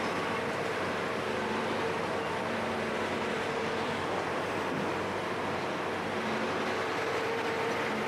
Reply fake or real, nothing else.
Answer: fake